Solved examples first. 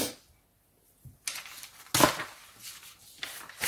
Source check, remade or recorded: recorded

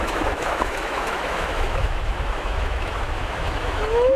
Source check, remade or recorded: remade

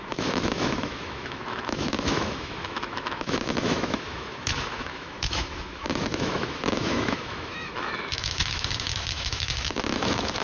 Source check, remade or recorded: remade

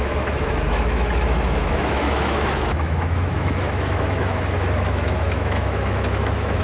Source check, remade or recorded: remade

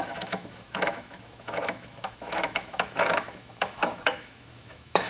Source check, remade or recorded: remade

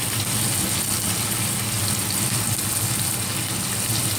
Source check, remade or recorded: recorded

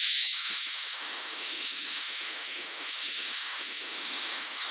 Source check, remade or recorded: remade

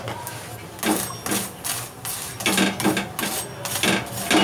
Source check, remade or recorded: recorded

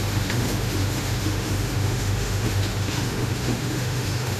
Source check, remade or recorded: remade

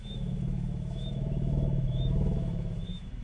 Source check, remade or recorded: remade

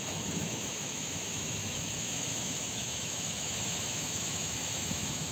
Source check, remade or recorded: remade